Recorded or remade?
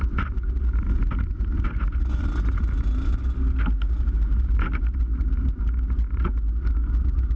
recorded